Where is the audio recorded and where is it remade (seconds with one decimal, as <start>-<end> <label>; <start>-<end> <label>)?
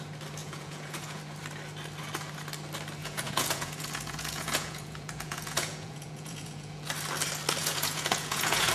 0.0-0.4 recorded; 0.4-1.2 remade; 1.2-3.0 recorded; 3.0-6.9 remade; 6.9-7.6 recorded; 7.6-8.7 remade